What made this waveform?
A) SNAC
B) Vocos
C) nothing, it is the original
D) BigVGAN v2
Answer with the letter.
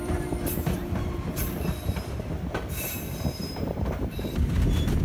D